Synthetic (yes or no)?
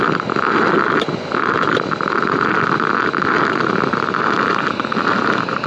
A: no